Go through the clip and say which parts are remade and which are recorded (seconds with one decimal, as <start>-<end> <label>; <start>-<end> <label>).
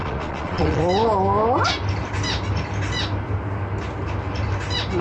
0.0-0.8 remade; 0.8-5.0 recorded